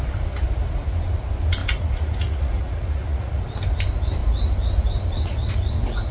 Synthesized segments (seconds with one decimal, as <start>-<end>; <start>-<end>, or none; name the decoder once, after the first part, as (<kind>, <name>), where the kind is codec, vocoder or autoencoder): 1.6-3.4 (vocoder, Vocos)